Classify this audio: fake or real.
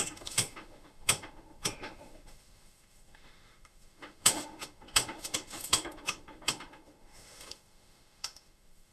fake